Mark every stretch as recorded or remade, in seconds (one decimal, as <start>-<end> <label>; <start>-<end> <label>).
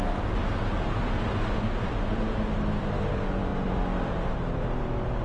0.0-5.2 recorded